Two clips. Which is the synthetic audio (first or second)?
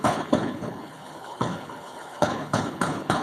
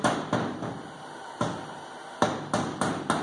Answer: first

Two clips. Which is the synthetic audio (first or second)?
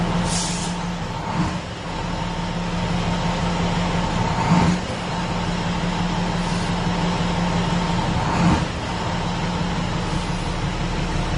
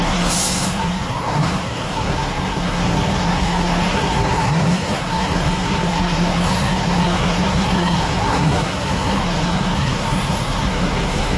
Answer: second